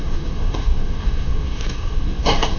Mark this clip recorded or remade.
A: remade